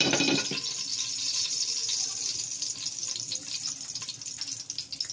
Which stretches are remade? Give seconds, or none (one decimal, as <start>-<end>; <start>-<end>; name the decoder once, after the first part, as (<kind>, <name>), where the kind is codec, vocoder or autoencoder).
none